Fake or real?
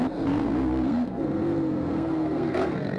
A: fake